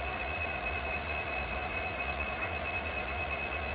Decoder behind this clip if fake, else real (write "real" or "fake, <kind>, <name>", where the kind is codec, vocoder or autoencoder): fake, vocoder, Vocos